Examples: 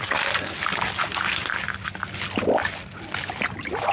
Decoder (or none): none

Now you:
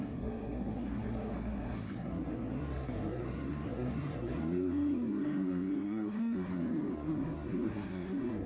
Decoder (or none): codec, SNAC